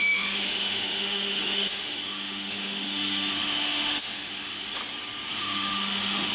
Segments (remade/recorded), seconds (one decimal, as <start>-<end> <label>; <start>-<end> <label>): 0.0-4.8 remade; 4.8-5.3 recorded; 5.3-6.3 remade